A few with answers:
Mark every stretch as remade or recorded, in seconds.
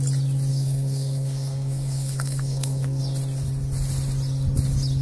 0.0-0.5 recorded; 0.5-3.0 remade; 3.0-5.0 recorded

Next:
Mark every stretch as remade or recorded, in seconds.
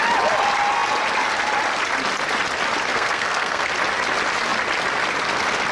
0.0-2.9 recorded; 2.9-3.7 remade; 3.7-5.7 recorded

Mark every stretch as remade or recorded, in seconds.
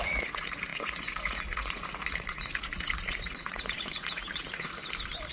0.0-4.8 remade; 4.8-5.3 recorded